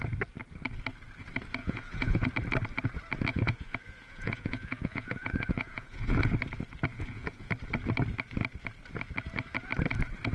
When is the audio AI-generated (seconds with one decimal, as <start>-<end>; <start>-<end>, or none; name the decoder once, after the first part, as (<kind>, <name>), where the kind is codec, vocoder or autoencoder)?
1.6-2.3 (vocoder, Vocos); 3.3-6.2; 6.9-7.5